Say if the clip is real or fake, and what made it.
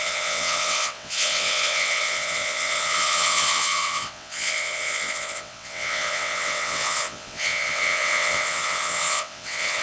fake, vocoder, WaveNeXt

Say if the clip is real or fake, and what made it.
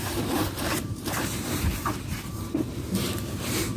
fake, vocoder, BigVGAN v2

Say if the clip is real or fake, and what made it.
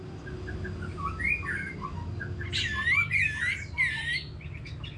real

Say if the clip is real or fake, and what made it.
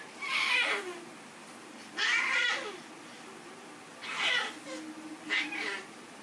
real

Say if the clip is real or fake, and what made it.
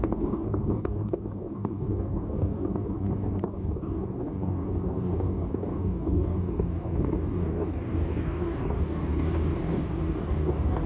fake, codec, DAC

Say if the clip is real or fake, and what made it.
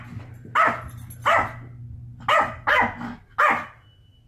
real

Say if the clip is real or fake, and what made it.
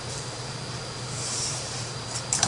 fake, vocoder, BigVGAN v2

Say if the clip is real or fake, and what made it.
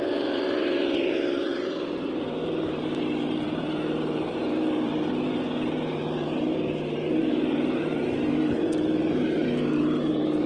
fake, vocoder, BigVGAN v2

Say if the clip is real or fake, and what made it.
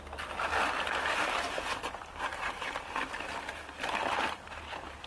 fake, vocoder, BigVGAN v2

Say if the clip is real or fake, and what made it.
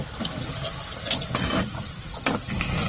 real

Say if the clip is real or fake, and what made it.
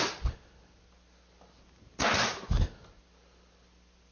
real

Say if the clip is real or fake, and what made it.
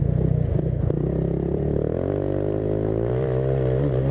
fake, vocoder, BigVGAN v2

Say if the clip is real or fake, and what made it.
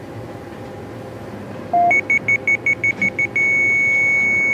real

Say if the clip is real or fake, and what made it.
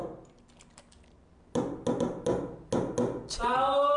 real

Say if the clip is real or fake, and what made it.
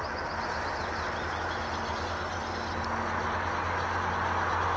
real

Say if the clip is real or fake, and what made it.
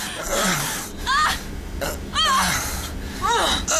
real